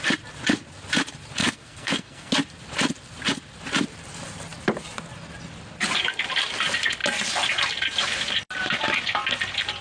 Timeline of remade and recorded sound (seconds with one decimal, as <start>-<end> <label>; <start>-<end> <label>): 0.0-1.4 recorded; 1.4-2.3 remade; 2.3-9.8 recorded